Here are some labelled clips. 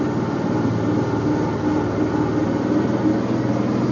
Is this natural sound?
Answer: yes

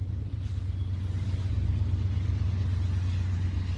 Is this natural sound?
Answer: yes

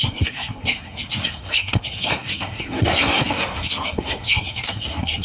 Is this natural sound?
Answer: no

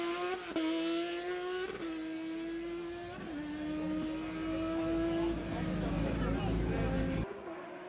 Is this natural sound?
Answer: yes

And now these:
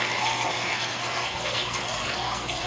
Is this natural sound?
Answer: no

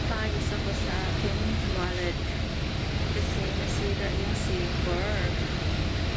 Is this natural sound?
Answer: yes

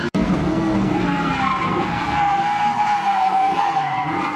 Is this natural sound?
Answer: no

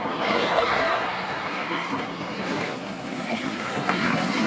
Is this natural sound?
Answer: no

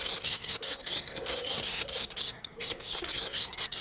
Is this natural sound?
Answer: no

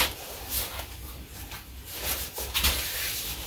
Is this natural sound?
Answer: yes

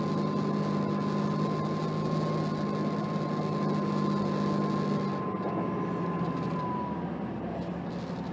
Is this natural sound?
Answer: yes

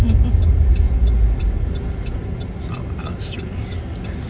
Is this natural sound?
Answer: yes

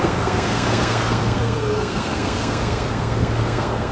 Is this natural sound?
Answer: no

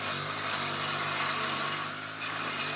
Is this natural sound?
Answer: yes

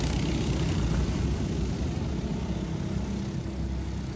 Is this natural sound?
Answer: yes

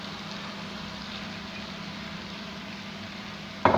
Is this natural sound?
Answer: yes